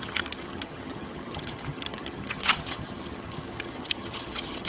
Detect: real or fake fake